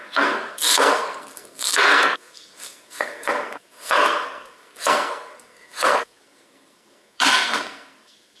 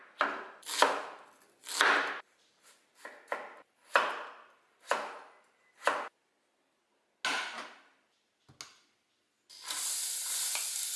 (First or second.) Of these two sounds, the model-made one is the first